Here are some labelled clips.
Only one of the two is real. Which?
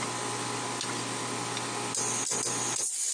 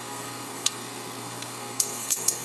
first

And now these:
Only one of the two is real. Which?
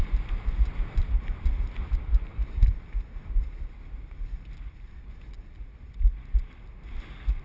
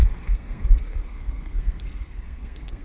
first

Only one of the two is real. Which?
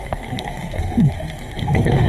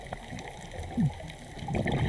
second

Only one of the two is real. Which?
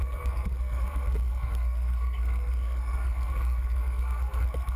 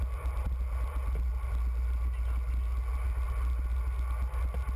second